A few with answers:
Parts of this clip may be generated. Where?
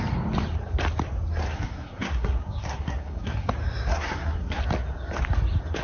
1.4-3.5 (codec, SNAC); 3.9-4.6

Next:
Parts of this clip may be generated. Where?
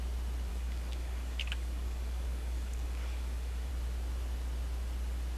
0.5-3.7 (codec, DAC)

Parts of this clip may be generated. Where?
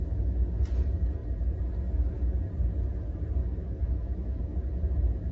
3.4-4.4 (autoencoder, DAC-VAE)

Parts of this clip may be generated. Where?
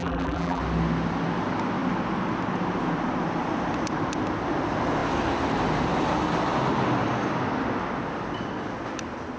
0.0-0.6 (vocoder, BigVGAN v2)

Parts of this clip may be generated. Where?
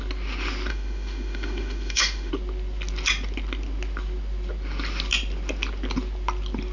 0.7-2.3 (autoencoder, DAC-VAE)